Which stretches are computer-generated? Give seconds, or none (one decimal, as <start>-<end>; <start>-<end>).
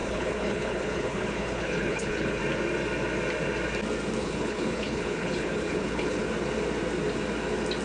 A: 0.0-2.4; 4.2-6.2